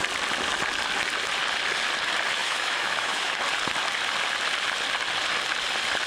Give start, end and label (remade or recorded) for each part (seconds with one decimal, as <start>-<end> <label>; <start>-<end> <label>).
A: 0.0-2.4 recorded; 2.4-3.4 remade; 3.4-6.1 recorded